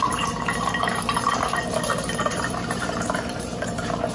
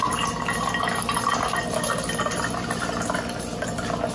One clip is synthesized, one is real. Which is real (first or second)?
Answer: second